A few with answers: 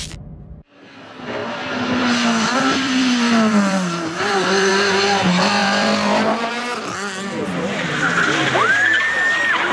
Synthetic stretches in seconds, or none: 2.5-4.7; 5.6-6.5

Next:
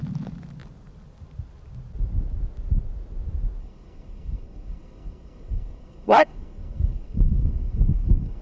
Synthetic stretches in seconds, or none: 3.6-8.4

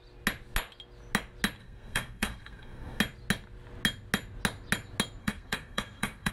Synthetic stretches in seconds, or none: 1.6-3.0; 5.2-6.3

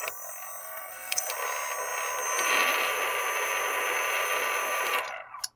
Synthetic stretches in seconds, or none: 0.6-1.3